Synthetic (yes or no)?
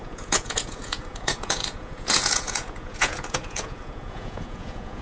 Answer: yes